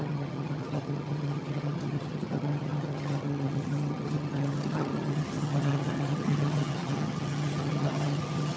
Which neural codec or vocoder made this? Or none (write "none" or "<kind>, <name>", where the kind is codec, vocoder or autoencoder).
vocoder, HiFi-GAN